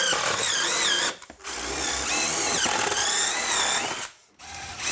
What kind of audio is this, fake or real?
real